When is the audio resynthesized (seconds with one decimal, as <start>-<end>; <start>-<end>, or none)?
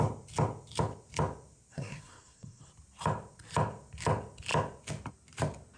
1.7-2.7